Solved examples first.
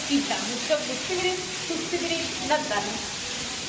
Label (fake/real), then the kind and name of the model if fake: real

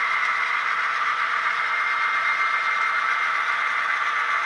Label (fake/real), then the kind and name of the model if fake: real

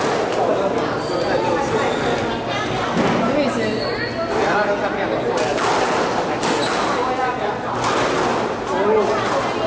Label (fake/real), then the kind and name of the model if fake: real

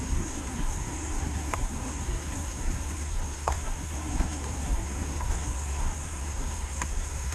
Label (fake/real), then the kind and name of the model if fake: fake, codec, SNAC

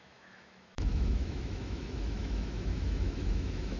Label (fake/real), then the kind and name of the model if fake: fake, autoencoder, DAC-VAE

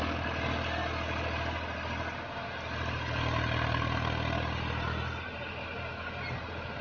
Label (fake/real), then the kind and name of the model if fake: real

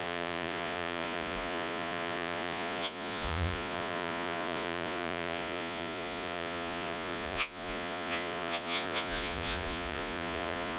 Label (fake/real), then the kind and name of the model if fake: fake, vocoder, Vocos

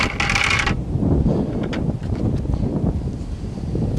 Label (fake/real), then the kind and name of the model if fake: real